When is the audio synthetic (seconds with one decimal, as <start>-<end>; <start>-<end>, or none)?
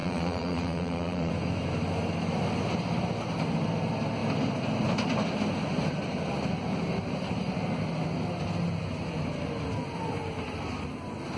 0.0-1.3